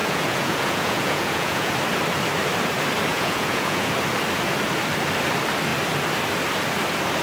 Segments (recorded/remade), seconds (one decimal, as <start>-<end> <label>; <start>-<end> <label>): 0.0-1.7 remade; 1.7-3.1 recorded; 3.1-3.9 remade; 3.9-7.2 recorded